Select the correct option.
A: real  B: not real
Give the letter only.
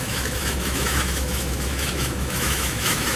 B